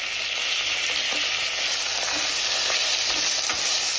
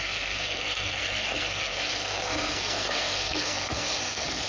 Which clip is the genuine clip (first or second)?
first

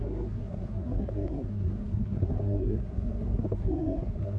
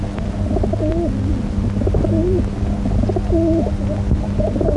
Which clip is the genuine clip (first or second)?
second